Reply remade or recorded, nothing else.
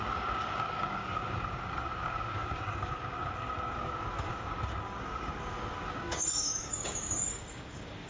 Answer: remade